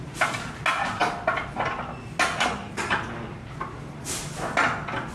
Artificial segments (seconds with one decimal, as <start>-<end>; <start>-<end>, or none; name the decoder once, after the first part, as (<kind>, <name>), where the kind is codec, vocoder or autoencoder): none